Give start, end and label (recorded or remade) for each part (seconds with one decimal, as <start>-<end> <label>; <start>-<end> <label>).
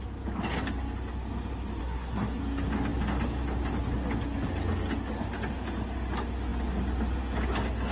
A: 0.0-1.8 recorded; 1.8-2.4 remade; 2.4-7.9 recorded